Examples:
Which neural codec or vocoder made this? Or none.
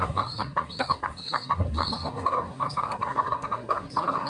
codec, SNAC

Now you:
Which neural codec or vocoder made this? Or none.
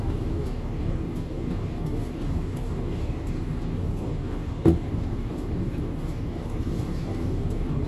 codec, DAC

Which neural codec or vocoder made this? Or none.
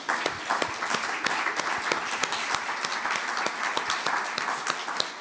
none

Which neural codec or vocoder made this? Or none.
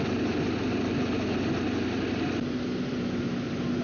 none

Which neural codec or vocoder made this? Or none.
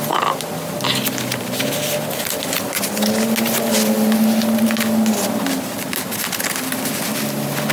none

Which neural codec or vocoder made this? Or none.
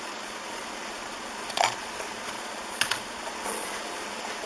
vocoder, Vocos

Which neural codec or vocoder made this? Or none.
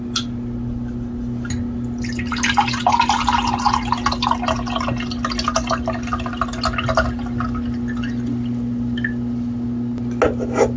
none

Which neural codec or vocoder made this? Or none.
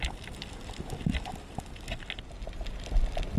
none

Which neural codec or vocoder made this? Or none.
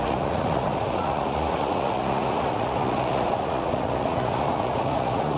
vocoder, Vocos